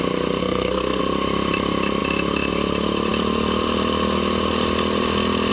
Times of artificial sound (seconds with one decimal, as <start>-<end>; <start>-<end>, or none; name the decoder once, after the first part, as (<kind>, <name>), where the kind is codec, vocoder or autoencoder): 0.4-1.0 (codec, SNAC)

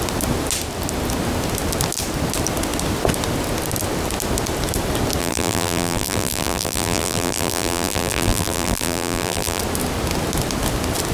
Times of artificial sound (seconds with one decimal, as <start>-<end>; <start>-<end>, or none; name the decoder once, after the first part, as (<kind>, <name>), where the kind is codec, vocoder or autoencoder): 5.2-9.6 (vocoder, BigVGAN v2)

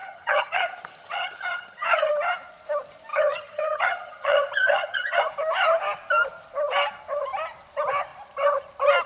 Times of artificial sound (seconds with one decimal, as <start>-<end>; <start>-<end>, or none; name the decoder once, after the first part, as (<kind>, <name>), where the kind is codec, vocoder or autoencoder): 0.0-2.1 (vocoder, HiFi-GAN); 3.1-5.2

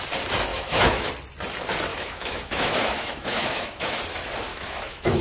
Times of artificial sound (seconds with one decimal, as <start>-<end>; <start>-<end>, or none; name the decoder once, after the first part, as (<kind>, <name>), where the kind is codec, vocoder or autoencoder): 0.5-1.1 (autoencoder, DAC-VAE); 1.9-4.0; 4.5-5.2